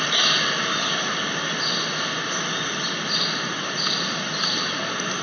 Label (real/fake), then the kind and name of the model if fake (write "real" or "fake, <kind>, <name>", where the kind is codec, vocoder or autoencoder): real